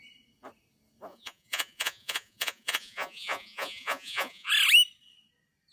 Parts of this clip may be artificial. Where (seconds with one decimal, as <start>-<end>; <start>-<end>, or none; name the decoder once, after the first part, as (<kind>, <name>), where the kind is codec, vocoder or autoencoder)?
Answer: 1.1-4.5 (vocoder, Vocos)